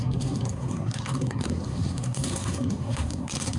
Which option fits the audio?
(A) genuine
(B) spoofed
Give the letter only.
B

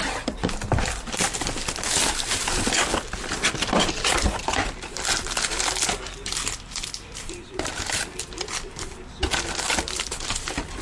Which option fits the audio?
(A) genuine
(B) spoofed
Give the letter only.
B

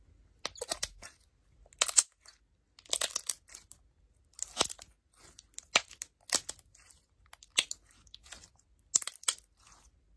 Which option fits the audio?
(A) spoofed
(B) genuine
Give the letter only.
B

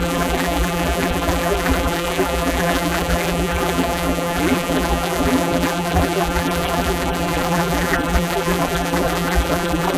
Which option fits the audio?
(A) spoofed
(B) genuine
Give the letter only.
A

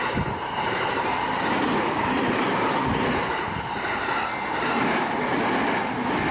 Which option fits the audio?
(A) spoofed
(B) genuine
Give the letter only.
B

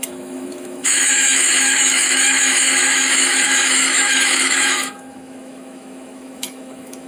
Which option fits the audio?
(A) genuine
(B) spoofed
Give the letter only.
B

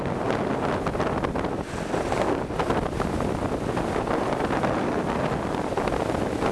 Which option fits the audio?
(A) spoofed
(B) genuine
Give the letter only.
B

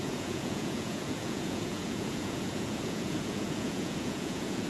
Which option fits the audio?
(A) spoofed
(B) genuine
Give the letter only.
A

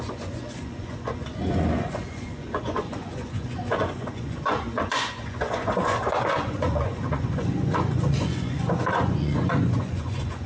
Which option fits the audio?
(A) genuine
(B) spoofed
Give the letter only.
B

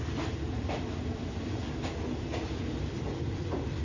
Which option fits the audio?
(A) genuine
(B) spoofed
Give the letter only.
B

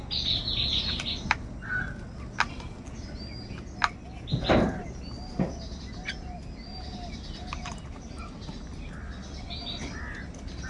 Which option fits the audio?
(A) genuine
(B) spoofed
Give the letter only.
A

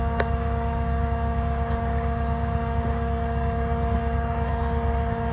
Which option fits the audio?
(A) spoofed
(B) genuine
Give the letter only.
A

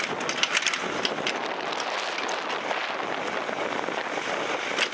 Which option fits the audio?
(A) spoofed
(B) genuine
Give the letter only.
B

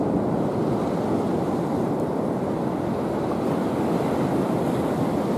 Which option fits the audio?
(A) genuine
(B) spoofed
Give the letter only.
A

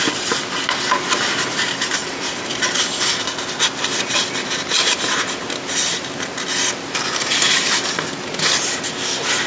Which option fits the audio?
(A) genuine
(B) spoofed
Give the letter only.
A